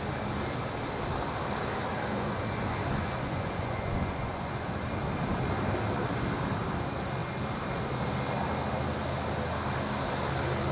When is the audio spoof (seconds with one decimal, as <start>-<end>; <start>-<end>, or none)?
1.9-4.8